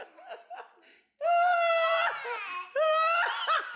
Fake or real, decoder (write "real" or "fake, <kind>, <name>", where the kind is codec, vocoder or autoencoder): real